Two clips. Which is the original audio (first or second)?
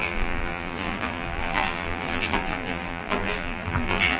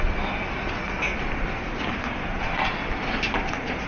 second